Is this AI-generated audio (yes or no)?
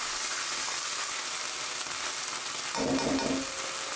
no